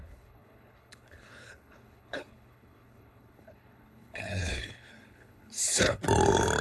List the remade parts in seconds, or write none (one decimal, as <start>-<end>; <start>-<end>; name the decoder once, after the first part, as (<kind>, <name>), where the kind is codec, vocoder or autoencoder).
0.0-6.0 (codec, HILCodec)